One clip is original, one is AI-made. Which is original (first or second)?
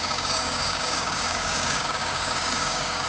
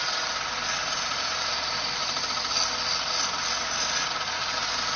second